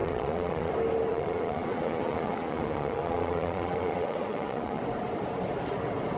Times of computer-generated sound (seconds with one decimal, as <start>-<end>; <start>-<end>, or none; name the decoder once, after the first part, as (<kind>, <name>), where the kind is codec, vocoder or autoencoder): 0.0-0.7 (vocoder, Vocos); 1.1-4.8